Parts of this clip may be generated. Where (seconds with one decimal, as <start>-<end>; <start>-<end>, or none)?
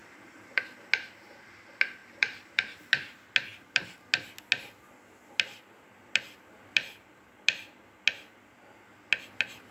0.0-0.9; 2.0-2.9